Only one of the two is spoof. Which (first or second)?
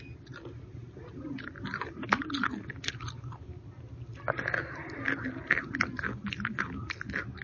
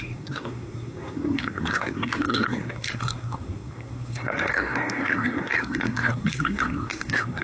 second